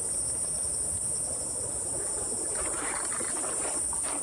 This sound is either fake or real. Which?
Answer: real